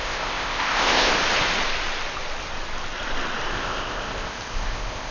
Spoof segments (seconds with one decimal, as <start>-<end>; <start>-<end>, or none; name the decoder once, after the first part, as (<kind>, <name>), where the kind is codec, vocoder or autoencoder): 0.0-1.1 (codec, ZipCodec); 3.5-5.1